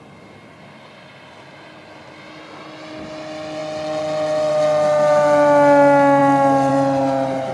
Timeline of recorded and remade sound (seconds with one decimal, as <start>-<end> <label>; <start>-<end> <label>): 0.0-7.5 recorded